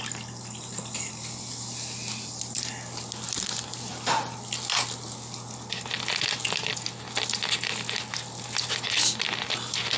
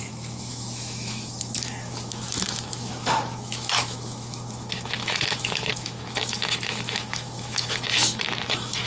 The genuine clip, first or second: first